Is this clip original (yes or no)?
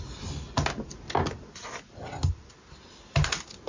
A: yes